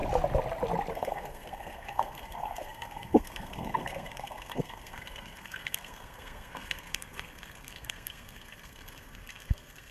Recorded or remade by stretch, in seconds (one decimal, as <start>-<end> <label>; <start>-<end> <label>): 0.0-0.9 recorded; 0.9-9.9 remade